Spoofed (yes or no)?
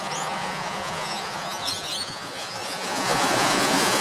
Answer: yes